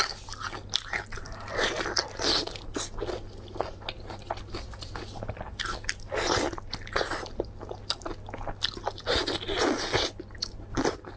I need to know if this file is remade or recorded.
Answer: recorded